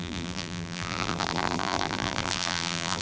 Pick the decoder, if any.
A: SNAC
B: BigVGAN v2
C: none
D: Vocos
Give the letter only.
B